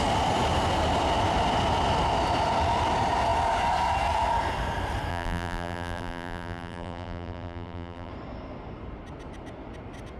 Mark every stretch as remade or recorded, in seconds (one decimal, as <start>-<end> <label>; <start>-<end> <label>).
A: 0.0-5.1 recorded; 5.1-8.1 remade; 8.1-10.2 recorded